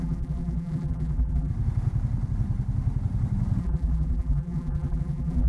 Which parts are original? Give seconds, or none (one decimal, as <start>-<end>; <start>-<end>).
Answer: 1.5-3.6

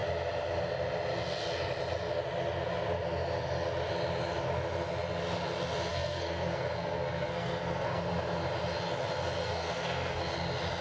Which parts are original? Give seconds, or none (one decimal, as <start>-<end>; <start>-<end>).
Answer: 0.0-5.9; 8.0-9.4; 10.2-10.8

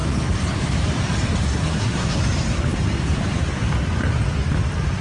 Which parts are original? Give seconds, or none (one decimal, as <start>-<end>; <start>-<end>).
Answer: 0.0-1.5; 2.2-5.0

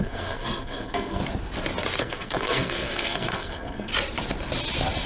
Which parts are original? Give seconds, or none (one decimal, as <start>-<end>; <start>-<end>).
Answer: 1.2-2.0; 3.9-5.1